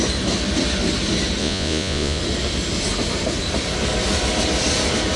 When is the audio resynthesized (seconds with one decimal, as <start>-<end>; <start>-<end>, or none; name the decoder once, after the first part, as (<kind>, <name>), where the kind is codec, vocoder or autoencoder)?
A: 1.4-2.2 (vocoder, Vocos)